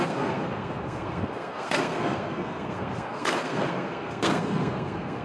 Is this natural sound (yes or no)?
no